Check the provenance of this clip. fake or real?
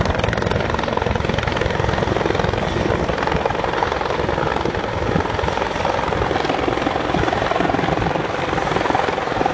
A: fake